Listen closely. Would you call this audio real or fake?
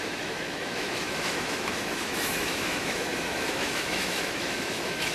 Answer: fake